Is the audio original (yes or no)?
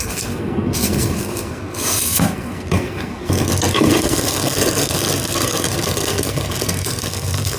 no